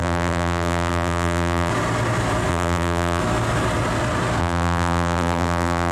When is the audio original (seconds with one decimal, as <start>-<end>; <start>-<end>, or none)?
1.7-2.5; 3.2-4.4